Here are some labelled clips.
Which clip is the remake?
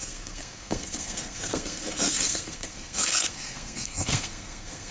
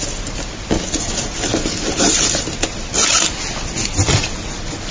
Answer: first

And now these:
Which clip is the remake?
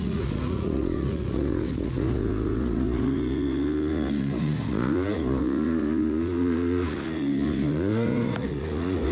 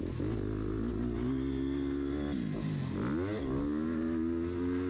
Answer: first